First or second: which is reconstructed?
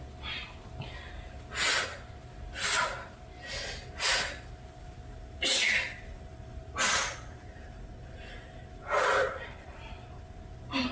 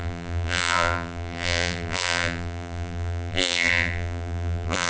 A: second